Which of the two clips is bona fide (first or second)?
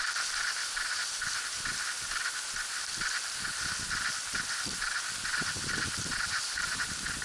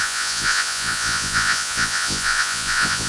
first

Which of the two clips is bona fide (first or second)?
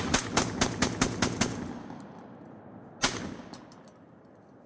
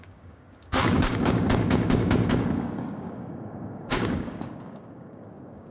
first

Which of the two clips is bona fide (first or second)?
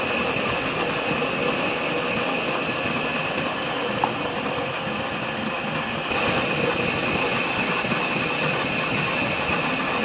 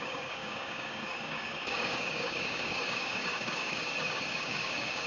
first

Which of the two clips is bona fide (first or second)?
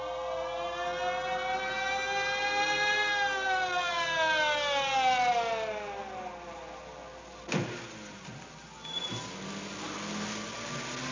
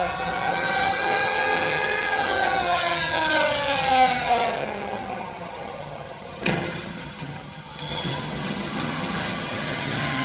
first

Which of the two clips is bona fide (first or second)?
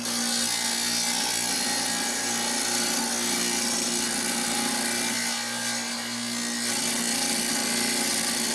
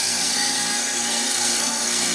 first